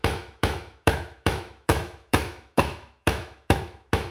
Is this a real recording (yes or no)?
no